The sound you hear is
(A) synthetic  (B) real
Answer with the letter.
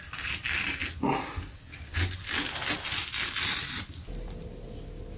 B